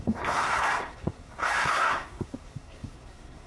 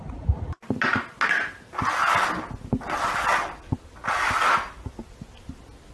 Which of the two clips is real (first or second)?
second